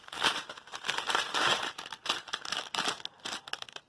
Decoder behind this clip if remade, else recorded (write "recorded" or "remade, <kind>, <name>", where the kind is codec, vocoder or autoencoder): recorded